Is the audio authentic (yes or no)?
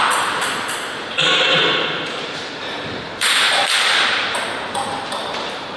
no